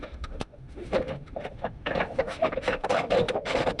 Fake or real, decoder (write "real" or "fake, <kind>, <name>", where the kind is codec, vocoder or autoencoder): fake, autoencoder, DAC-VAE